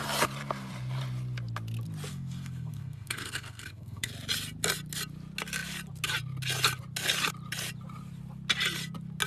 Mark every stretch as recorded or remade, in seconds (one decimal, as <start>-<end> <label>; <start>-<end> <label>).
0.0-2.1 recorded; 2.1-4.1 remade; 4.1-9.3 recorded